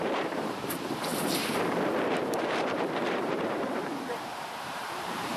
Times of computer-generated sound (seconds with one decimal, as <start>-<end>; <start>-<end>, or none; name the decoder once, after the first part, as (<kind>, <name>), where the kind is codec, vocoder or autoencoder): 0.0-5.4 (vocoder, BigVGAN v2)